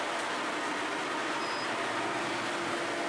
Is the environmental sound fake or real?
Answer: real